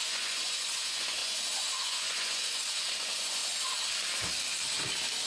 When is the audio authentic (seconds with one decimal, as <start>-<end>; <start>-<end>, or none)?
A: 3.4-5.3